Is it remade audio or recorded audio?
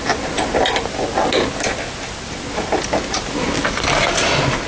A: recorded